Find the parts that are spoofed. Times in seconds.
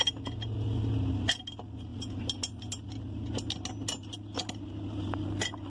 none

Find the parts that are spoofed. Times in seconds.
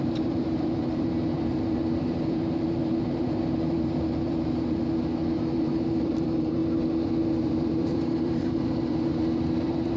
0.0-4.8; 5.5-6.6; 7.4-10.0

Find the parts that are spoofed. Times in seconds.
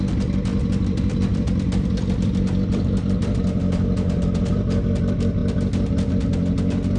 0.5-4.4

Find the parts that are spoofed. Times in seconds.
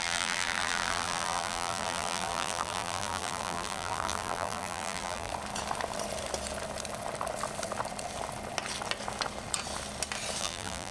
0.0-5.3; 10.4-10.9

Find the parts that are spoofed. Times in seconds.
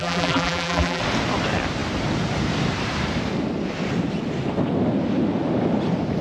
0.0-1.0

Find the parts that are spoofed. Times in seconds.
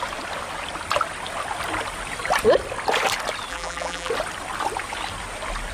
3.5-4.1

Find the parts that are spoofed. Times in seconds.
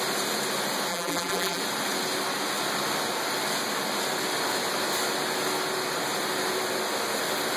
0.9-1.6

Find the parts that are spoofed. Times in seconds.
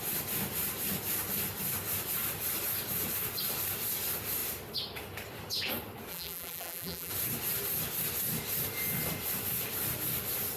6.1-7.1